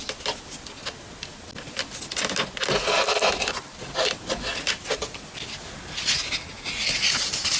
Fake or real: real